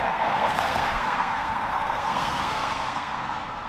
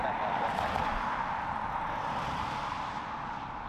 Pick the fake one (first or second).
first